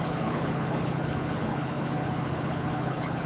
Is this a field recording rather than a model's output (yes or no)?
no